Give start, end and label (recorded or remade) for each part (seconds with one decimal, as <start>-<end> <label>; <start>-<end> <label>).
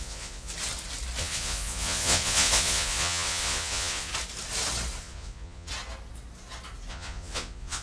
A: 0.0-0.5 remade; 0.5-1.2 recorded; 1.2-4.1 remade; 4.1-5.0 recorded; 5.0-5.7 remade; 5.7-6.9 recorded; 6.9-7.8 remade